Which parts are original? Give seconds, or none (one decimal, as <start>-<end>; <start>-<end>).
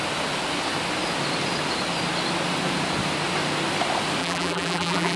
0.0-4.2